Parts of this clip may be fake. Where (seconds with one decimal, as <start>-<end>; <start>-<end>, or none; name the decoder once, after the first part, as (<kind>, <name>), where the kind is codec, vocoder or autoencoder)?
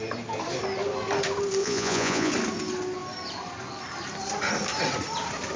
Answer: 1.6-2.3 (vocoder, Vocos)